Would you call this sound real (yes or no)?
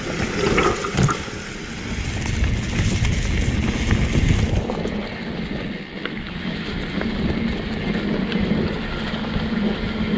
yes